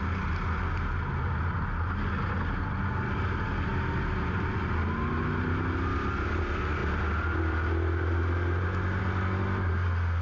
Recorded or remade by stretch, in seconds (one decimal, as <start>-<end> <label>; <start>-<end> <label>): 0.0-10.2 recorded

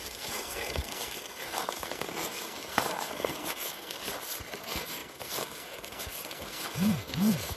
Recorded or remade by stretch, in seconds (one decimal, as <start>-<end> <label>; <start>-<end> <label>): 0.0-4.0 remade; 4.0-4.6 recorded; 4.6-7.6 remade

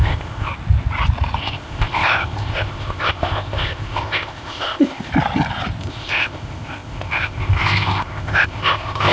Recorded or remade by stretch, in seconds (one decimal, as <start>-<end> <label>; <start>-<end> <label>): 0.0-0.5 remade; 0.5-1.4 recorded; 1.4-5.1 remade; 5.1-5.8 recorded; 5.8-9.1 remade

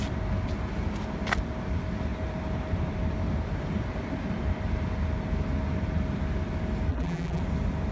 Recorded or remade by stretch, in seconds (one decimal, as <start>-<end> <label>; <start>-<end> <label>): 0.0-6.9 recorded; 6.9-7.4 remade; 7.4-7.9 recorded

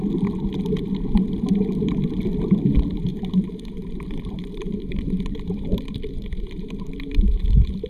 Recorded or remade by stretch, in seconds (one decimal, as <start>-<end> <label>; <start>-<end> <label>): 0.0-3.1 recorded; 3.1-7.4 remade; 7.4-7.9 recorded